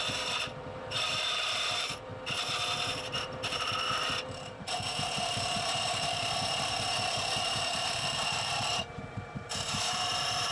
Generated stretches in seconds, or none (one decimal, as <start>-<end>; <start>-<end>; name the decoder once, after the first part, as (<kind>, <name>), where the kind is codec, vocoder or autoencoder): 0.0-2.1 (vocoder, BigVGAN v2); 2.9-10.5